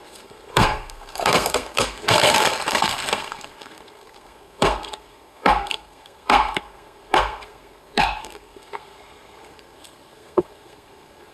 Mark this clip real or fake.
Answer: fake